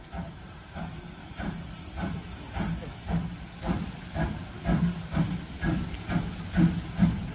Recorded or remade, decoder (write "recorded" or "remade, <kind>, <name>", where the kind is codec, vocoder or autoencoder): recorded